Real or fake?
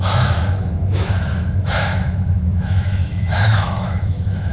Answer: fake